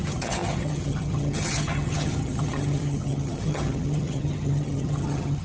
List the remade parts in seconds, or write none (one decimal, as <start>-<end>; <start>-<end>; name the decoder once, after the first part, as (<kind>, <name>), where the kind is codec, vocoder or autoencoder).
0.0-5.4 (vocoder, HiFi-GAN)